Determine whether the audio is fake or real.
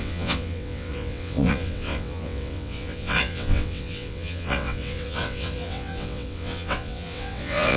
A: fake